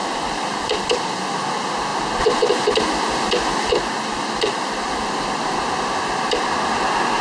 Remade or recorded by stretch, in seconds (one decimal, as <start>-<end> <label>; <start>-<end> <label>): 0.0-1.1 remade; 1.1-7.2 recorded